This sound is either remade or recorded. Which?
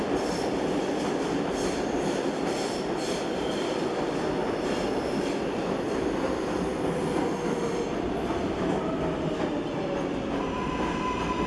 recorded